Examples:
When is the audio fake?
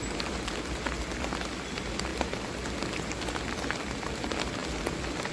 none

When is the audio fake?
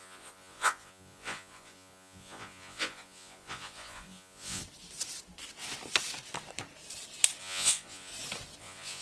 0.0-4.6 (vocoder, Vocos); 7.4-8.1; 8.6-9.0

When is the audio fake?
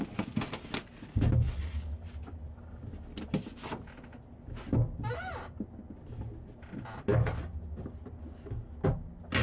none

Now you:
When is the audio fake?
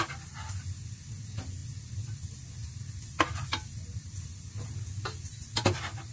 none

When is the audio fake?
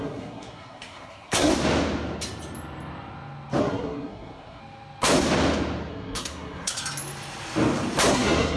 0.0-1.5 (codec, SNAC); 3.6-4.6; 5.9-6.8; 8.1-8.6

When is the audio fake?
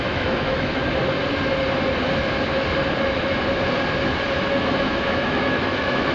0.0-0.8 (autoencoder, DAC-VAE); 4.5-6.1